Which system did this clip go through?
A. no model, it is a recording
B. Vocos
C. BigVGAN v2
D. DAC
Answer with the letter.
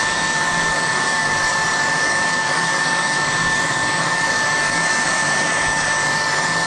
D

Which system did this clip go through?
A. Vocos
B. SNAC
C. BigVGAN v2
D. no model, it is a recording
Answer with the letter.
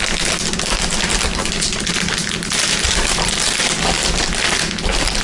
D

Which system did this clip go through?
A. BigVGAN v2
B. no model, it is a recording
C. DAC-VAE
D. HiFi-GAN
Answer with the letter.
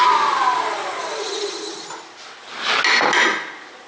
B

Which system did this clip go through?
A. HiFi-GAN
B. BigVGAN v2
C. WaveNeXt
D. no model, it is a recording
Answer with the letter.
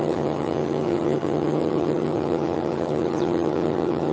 A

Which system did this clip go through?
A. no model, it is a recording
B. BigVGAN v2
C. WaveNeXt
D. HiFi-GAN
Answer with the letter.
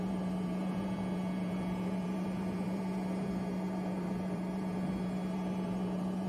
B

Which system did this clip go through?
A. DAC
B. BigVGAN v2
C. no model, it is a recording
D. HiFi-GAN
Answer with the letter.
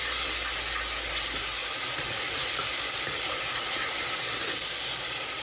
C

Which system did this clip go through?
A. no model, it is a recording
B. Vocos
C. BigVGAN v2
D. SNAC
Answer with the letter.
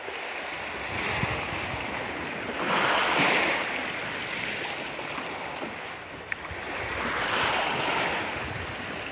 A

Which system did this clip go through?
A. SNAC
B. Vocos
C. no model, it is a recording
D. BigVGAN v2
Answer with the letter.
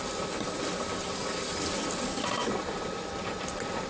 C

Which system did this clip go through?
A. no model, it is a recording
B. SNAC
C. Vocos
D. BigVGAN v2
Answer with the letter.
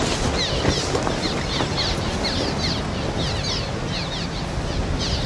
A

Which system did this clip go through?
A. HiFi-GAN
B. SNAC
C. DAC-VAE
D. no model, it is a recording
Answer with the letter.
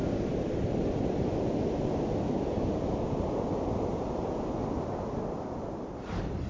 D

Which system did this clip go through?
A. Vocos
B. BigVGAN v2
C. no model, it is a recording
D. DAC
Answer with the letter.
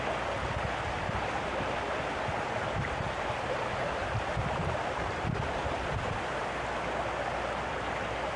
C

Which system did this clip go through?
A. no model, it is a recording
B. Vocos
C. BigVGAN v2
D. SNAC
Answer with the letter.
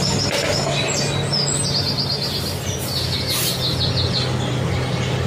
A